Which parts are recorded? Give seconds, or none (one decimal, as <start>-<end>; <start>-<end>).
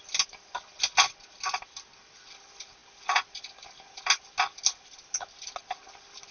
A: 0.0-6.3